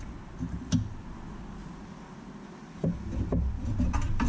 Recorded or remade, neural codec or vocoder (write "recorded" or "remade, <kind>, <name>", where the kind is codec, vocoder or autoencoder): recorded